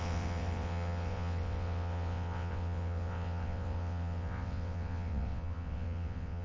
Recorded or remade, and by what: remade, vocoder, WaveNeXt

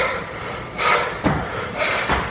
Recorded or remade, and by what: recorded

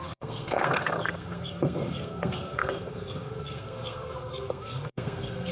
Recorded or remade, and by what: remade, codec, SNAC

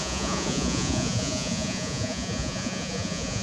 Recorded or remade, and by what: remade, vocoder, Vocos